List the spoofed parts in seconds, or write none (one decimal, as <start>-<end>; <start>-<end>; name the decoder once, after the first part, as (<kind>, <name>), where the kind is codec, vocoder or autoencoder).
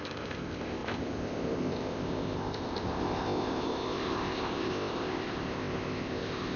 0.0-6.6 (codec, ZipCodec)